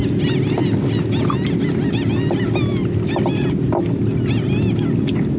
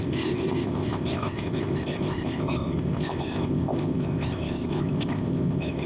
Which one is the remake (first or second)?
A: second